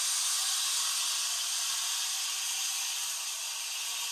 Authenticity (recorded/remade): recorded